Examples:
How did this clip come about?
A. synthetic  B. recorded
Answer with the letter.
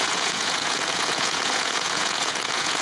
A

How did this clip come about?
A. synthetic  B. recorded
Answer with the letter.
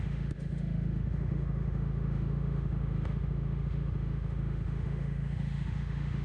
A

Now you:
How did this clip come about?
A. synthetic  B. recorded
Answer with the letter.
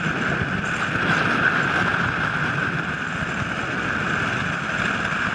B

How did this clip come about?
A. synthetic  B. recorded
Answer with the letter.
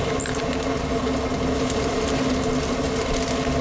B